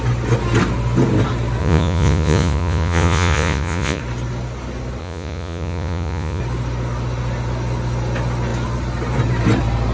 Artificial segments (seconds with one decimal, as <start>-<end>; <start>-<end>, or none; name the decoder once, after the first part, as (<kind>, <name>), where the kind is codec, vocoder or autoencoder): 1.6-4.0 (vocoder, Vocos); 5.0-6.4